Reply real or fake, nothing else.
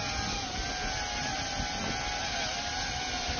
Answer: real